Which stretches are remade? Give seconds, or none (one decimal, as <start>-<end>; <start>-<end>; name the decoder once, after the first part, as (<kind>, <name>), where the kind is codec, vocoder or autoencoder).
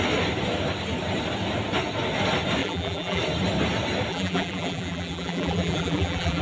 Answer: 2.6-3.2 (vocoder, BigVGAN v2); 4.1-6.4